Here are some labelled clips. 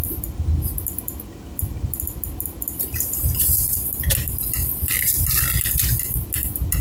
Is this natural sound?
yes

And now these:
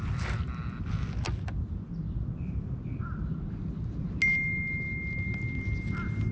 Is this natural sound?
yes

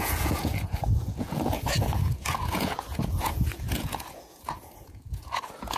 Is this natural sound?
no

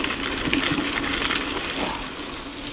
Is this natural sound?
yes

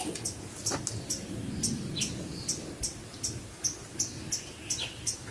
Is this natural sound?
yes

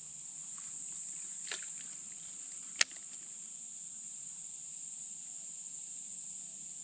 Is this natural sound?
yes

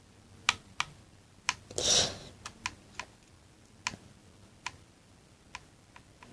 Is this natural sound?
yes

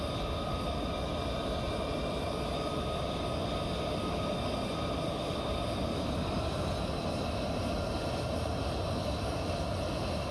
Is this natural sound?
yes